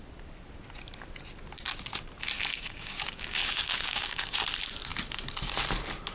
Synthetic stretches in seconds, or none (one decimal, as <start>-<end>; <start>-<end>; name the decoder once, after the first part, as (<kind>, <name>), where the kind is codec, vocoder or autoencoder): 2.5-4.4 (codec, DAC)